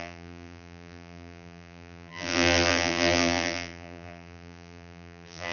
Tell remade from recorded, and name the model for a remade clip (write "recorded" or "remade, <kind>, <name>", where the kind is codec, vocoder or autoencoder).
remade, vocoder, BigVGAN v2